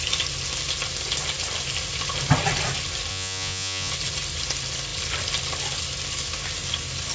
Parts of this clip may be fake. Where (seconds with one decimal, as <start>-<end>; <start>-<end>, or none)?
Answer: 3.1-3.9